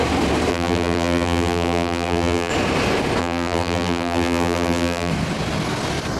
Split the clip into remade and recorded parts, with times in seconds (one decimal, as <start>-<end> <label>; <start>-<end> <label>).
0.0-0.5 recorded; 0.5-2.5 remade; 2.5-3.2 recorded; 3.2-5.1 remade; 5.1-6.2 recorded